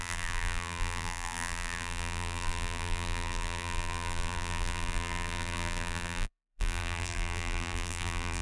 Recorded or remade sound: remade